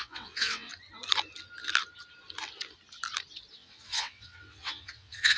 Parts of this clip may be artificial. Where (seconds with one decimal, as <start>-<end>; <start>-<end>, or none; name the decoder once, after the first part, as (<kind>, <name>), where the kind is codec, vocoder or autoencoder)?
0.0-0.7 (vocoder, WaveNeXt); 3.5-5.4